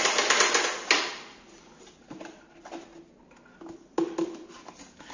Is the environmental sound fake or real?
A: real